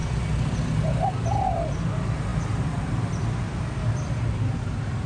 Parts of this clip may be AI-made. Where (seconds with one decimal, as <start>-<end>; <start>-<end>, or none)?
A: none